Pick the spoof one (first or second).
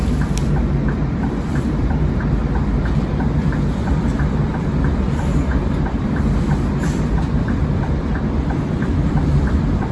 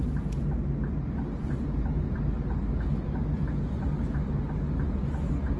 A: first